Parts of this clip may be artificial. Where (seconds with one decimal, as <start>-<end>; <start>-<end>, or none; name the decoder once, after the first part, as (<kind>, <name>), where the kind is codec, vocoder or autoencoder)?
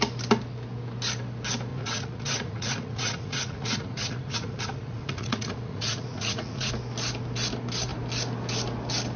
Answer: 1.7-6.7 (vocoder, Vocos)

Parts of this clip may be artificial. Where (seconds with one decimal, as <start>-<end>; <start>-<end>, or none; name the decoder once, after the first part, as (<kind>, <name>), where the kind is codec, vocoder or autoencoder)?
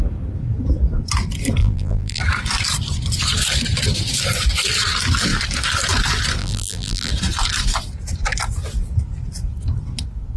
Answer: 1.6-2.2 (vocoder, BigVGAN v2); 6.4-7.1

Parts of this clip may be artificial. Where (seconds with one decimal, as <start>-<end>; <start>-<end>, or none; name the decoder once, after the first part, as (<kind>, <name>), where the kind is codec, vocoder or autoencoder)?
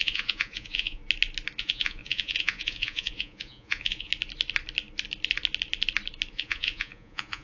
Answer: 0.0-1.0 (vocoder, Vocos); 1.6-4.1; 6.3-7.4